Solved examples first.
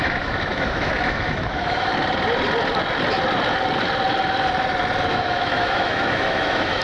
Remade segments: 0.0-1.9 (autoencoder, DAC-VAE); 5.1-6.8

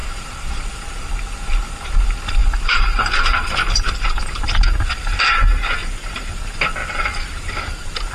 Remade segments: 0.0-1.1 (vocoder, BigVGAN v2); 2.4-4.4; 6.8-7.4

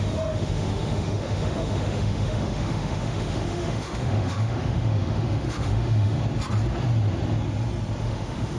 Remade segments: 0.0-6.2 (autoencoder, DAC-VAE); 8.0-8.6

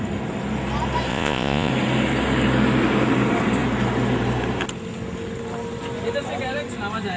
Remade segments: 1.1-1.7 (vocoder, Vocos)

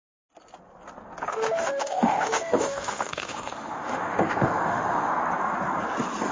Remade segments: 1.3-5.1 (autoencoder, DAC-VAE)

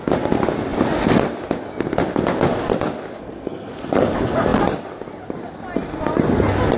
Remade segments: 3.2-3.7 (codec, SNAC)

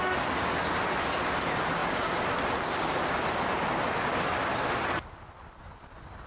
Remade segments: none

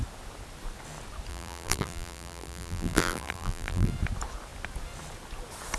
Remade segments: 1.3-3.9 (vocoder, BigVGAN v2)